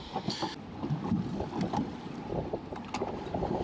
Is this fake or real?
real